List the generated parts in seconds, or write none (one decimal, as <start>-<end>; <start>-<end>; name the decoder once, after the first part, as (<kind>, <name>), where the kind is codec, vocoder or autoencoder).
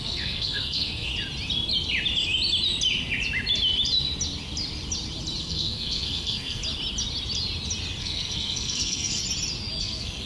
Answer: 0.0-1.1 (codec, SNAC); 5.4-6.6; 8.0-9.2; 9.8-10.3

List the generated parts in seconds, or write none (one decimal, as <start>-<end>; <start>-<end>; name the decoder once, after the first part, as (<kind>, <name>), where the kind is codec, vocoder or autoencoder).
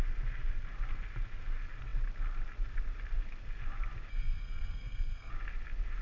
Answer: 4.1-5.3 (codec, SNAC)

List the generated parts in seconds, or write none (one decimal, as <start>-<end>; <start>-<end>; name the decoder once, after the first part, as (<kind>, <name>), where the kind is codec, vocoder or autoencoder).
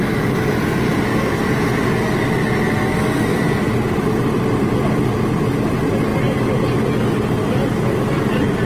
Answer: none